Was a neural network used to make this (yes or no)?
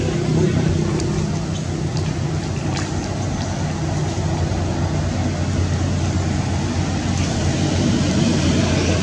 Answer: no